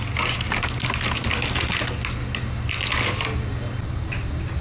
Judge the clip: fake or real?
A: real